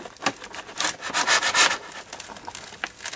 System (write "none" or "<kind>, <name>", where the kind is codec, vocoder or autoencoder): none